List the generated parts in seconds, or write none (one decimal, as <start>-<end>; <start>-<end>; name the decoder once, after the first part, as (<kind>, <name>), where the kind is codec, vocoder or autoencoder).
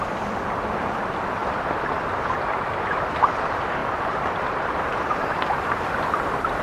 3.8-5.3 (vocoder, BigVGAN v2)